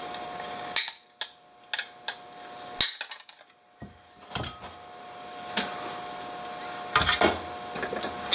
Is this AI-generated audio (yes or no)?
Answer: no